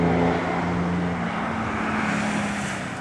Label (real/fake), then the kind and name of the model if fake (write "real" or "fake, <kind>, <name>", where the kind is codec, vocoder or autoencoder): real